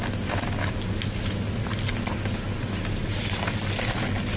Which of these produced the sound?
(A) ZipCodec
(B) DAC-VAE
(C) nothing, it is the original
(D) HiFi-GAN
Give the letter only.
C